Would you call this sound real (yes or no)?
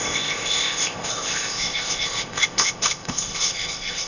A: no